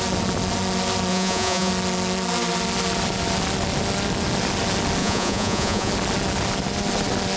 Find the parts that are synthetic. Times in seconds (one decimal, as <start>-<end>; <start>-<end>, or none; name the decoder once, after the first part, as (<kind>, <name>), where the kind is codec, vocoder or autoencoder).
1.1-1.7 (vocoder, Vocos); 5.0-5.9